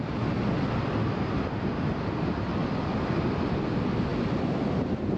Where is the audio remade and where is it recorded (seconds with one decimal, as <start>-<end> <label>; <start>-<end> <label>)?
0.0-2.6 recorded; 2.6-3.6 remade; 3.6-4.1 recorded; 4.1-4.7 remade; 4.7-5.2 recorded